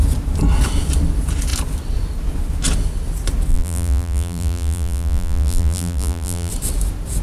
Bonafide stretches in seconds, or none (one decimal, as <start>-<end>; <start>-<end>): 0.0-3.5; 6.5-7.2